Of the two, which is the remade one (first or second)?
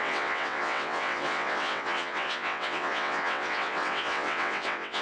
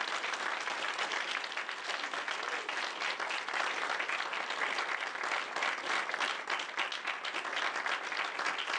first